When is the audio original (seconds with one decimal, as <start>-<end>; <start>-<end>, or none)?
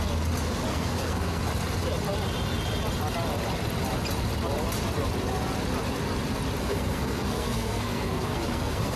0.0-0.7; 1.4-6.6